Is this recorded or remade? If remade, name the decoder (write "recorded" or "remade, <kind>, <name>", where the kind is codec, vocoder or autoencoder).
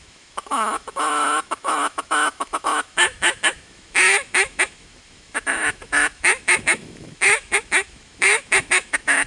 remade, autoencoder, DAC-VAE